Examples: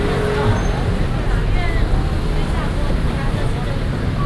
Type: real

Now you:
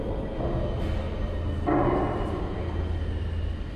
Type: real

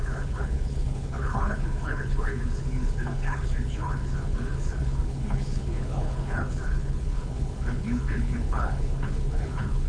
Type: fake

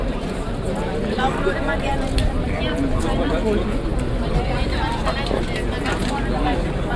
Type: real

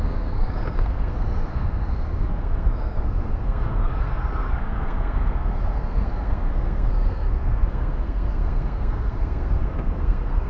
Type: fake